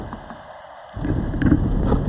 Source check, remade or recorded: recorded